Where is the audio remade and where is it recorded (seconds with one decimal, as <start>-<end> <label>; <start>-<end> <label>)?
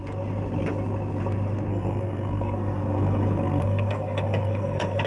0.0-1.7 recorded; 1.7-5.1 remade